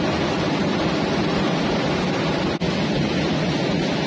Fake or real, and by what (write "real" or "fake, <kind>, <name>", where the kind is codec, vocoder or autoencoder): real